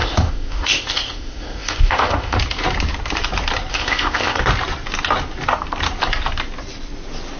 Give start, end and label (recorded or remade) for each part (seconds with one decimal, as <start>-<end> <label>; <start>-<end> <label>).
0.0-2.4 remade; 2.4-3.7 recorded; 3.7-4.4 remade; 4.4-7.4 recorded